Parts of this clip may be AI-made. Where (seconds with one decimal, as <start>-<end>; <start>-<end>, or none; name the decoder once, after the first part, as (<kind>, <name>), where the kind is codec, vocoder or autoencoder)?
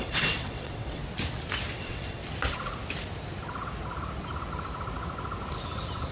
0.0-1.0 (vocoder, WaveNeXt); 1.7-2.2